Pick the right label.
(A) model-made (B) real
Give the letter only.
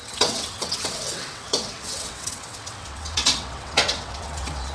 A